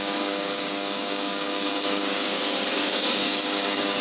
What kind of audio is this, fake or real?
fake